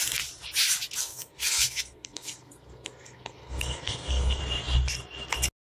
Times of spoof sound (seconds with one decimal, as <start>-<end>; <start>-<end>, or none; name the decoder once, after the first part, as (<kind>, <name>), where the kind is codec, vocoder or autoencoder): 1.0-4.4 (codec, SNAC)